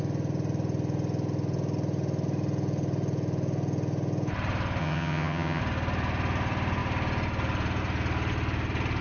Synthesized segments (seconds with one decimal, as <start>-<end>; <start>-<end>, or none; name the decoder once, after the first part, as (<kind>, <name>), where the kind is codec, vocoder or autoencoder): 4.8-5.6 (vocoder, HiFi-GAN)